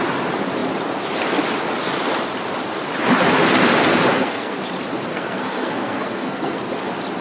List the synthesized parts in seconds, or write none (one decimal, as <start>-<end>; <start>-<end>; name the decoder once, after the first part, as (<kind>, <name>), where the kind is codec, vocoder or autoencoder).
4.1-4.6 (codec, SNAC); 5.1-6.6